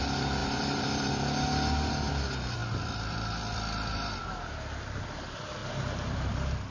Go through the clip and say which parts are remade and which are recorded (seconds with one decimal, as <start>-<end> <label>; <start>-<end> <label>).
0.0-0.4 recorded; 0.4-1.1 remade; 1.1-5.6 recorded; 5.6-6.7 remade